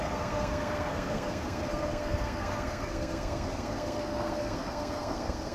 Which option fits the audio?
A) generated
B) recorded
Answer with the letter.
A